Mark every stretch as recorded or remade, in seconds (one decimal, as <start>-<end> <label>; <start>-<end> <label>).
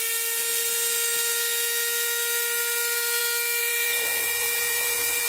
0.0-3.6 recorded; 3.6-5.3 remade